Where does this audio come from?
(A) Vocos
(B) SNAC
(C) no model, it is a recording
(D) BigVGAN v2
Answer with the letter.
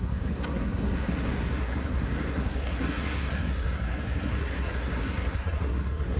B